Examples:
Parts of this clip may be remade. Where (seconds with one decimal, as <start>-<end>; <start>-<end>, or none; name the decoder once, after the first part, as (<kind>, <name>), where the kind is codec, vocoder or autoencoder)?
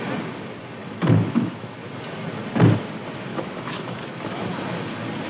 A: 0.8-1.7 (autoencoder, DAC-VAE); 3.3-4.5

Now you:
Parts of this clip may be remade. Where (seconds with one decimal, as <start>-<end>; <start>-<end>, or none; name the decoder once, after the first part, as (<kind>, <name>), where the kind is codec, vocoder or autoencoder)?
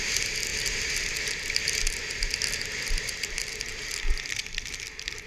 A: none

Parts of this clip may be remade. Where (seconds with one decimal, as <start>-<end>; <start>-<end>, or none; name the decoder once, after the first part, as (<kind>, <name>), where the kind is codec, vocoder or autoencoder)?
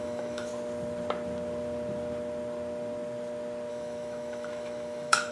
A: 0.0-0.5 (autoencoder, DAC-VAE); 3.7-5.3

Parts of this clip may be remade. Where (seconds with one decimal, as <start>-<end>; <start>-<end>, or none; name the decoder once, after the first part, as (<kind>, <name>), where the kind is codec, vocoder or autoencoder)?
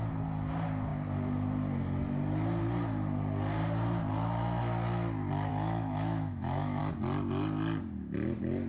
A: 5.5-6.8 (autoencoder, DAC-VAE)